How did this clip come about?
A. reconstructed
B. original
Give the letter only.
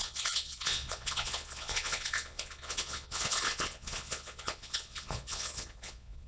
A